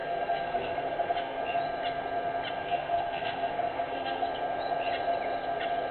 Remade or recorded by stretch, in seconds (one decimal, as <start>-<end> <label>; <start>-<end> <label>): 0.0-1.4 remade; 1.4-2.6 recorded; 2.6-4.3 remade; 4.3-5.9 recorded